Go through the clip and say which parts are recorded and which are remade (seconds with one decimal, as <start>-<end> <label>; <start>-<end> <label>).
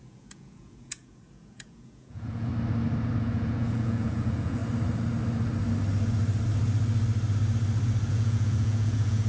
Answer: 0.0-2.5 remade; 2.5-3.2 recorded; 3.2-4.6 remade; 4.6-8.1 recorded; 8.1-9.3 remade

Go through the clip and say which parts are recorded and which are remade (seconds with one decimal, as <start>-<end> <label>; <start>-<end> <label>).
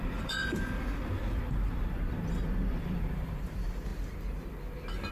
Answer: 0.0-3.9 remade; 3.9-5.1 recorded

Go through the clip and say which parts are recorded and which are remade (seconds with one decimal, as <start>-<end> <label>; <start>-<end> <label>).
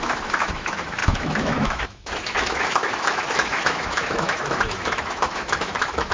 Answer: 0.0-6.1 remade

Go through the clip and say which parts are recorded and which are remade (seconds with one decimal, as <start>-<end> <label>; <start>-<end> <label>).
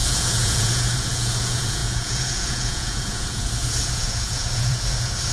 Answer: 0.0-5.3 remade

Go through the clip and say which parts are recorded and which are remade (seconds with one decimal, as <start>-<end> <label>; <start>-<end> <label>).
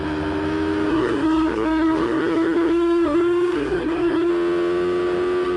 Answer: 0.0-0.9 recorded; 0.9-4.3 remade; 4.3-5.6 recorded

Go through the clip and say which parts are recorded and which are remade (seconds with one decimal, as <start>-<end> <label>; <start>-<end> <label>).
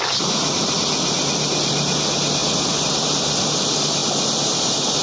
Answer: 0.0-5.0 recorded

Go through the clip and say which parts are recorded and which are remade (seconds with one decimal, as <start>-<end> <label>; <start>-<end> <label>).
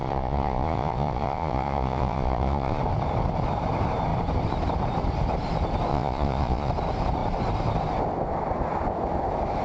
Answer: 0.0-2.8 remade; 2.8-5.9 recorded; 5.9-6.7 remade; 6.7-9.6 recorded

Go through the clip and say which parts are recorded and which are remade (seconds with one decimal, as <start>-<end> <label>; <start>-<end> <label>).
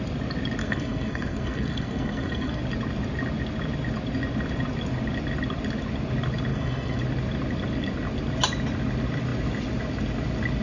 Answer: 0.0-0.6 recorded; 0.6-2.6 remade; 2.6-6.5 recorded; 6.5-7.0 remade; 7.0-10.6 recorded